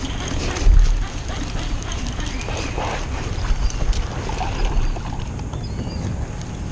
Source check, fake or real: real